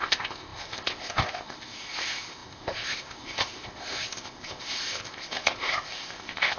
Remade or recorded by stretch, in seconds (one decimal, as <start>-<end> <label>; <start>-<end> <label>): 0.0-6.6 remade